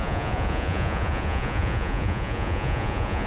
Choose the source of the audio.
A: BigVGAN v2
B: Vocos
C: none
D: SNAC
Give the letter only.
B